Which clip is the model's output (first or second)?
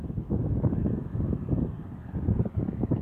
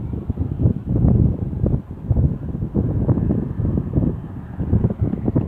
first